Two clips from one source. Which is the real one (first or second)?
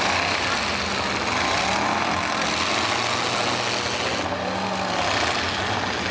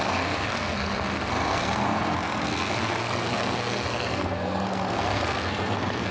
first